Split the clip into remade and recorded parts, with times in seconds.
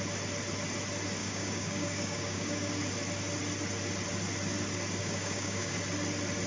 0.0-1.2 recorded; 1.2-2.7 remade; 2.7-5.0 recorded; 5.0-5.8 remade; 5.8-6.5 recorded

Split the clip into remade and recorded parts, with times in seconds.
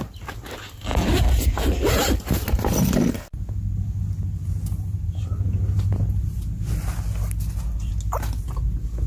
0.0-9.1 recorded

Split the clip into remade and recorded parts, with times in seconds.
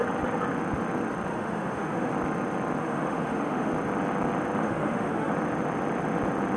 0.0-1.3 recorded; 1.3-2.1 remade; 2.1-2.8 recorded; 2.8-3.7 remade; 3.7-4.6 recorded; 4.6-5.3 remade; 5.3-6.6 recorded